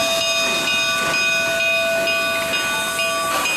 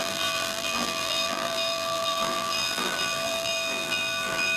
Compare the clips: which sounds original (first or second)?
first